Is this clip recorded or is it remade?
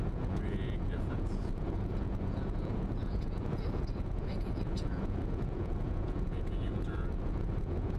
remade